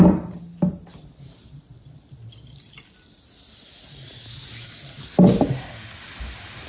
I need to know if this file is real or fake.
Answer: real